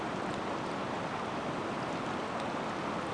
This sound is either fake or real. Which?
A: real